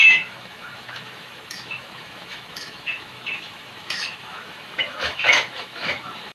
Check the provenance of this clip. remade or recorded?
remade